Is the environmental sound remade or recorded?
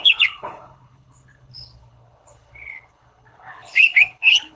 remade